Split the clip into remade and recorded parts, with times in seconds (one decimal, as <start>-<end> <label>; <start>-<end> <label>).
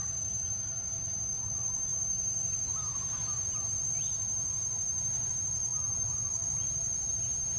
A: 0.0-7.6 recorded